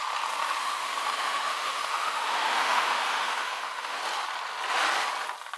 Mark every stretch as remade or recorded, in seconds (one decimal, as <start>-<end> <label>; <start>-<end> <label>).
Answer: 0.0-0.6 recorded; 0.6-4.0 remade; 4.0-5.6 recorded